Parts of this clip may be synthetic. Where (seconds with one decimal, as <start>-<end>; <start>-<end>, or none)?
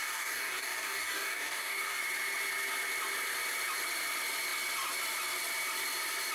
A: 0.0-2.0